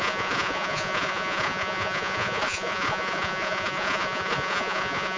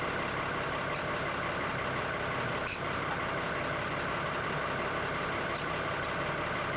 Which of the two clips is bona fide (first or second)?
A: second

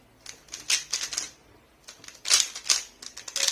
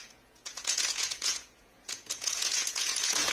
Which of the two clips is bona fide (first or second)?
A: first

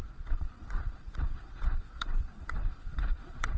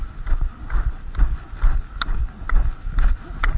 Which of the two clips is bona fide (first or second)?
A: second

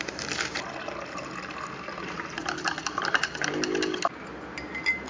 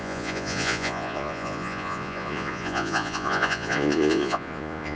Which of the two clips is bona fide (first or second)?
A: first